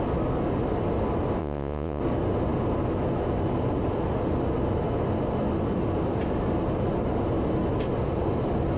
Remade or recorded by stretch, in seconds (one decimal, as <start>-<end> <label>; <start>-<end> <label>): 0.0-1.4 recorded; 1.4-2.0 remade; 2.0-8.8 recorded

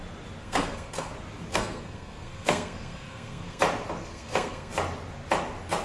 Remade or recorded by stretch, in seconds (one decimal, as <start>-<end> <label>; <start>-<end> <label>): 0.0-0.4 recorded; 0.4-1.1 remade; 1.1-1.5 recorded; 1.5-3.6 remade; 3.6-4.0 recorded; 4.0-4.7 remade; 4.7-5.8 recorded